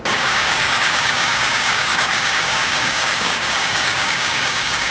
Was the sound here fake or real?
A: fake